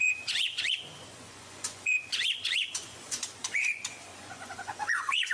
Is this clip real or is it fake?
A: fake